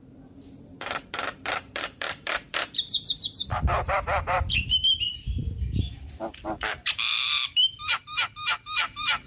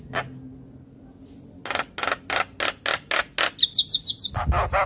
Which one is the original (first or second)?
second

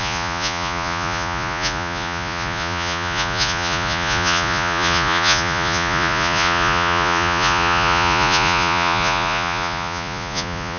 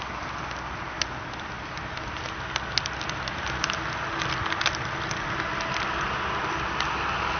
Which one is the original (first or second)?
second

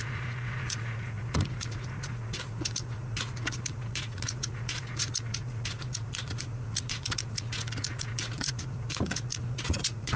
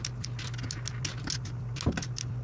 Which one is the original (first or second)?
second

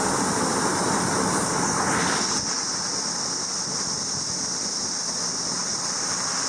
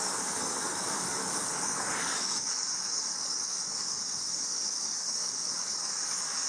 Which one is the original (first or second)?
first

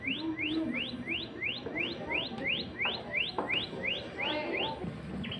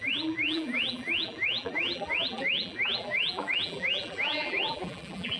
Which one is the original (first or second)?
first